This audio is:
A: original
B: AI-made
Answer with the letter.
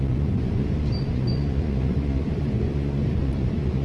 B